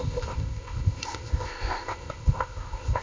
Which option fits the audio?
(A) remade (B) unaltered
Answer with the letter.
A